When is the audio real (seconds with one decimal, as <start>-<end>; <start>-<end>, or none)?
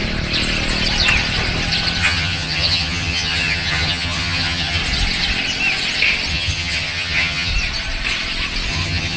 0.0-2.0; 4.8-6.3; 7.5-8.7